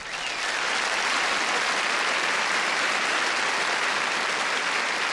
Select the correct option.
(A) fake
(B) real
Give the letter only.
B